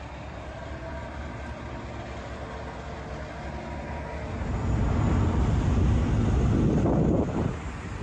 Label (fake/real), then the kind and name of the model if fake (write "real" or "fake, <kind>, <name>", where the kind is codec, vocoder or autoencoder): real